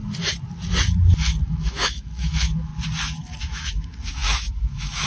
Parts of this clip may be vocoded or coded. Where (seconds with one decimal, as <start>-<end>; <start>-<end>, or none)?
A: 1.4-2.7; 3.4-5.1